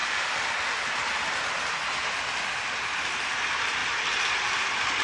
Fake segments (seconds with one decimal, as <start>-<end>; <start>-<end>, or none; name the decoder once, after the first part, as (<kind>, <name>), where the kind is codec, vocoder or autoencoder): none